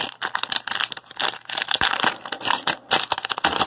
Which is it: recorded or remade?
recorded